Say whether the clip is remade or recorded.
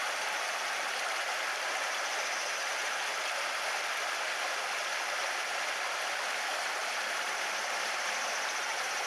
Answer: recorded